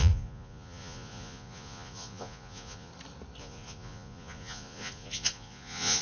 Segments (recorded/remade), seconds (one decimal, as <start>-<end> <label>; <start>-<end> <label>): 0.0-2.9 remade; 2.9-3.4 recorded; 3.4-6.0 remade